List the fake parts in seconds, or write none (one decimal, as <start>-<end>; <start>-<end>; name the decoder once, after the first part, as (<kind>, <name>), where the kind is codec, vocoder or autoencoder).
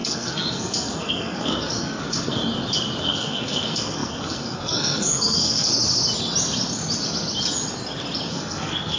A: 0.0-2.4 (codec, SNAC); 3.0-5.7; 8.3-9.0